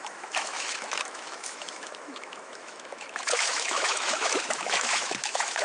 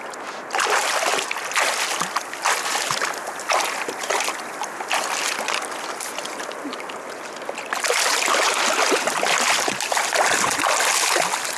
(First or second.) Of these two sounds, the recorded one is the second